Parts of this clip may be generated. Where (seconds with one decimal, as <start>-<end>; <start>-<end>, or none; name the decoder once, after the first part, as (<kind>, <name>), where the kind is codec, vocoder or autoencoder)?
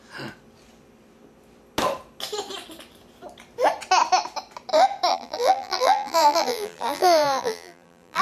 5.1-8.2 (vocoder, BigVGAN v2)